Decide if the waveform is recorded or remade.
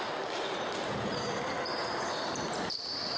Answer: recorded